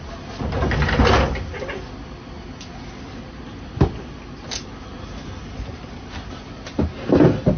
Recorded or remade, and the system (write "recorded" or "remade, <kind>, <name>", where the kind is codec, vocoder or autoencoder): recorded